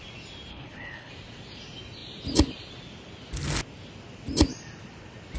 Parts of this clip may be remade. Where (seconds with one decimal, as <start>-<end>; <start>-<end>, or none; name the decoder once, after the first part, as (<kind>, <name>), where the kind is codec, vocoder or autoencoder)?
0.5-1.1 (codec, HILCodec)